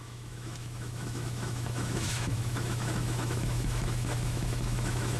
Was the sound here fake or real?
fake